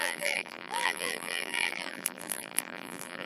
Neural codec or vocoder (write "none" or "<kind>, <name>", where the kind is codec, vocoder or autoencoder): vocoder, BigVGAN v2